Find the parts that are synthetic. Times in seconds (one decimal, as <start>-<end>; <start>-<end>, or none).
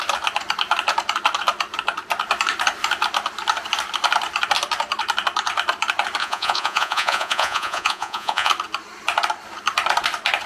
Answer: 6.2-8.5